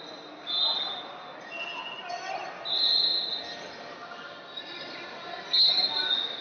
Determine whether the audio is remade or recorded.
recorded